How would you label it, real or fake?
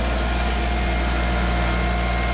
real